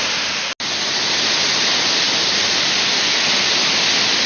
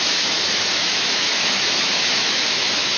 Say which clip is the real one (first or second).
first